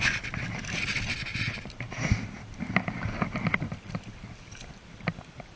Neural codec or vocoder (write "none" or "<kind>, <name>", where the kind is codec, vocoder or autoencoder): none